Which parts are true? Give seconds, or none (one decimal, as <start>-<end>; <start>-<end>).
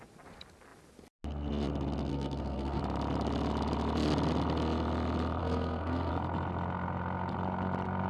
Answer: 0.0-2.1; 2.8-5.4; 6.1-8.1